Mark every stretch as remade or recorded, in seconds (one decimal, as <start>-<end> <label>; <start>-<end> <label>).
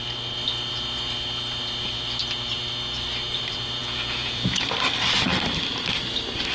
0.0-3.8 recorded; 3.8-4.7 remade; 4.7-6.5 recorded